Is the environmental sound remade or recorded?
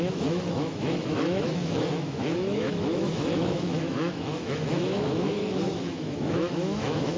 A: remade